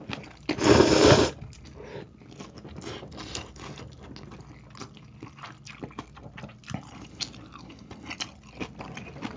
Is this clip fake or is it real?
real